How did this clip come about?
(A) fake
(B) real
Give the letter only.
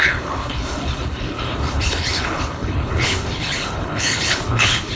A